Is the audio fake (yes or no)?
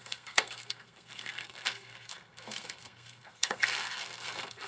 yes